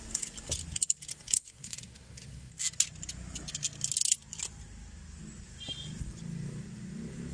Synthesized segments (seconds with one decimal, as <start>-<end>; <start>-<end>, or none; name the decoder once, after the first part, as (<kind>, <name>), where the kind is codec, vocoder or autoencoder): 1.1-2.5 (codec, SNAC)